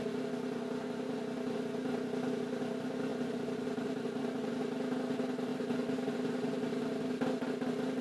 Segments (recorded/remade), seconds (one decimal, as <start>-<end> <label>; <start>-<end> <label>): 0.0-3.1 recorded; 3.1-4.5 remade; 4.5-5.5 recorded; 5.5-6.1 remade; 6.1-8.0 recorded